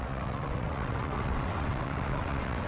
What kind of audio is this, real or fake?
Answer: fake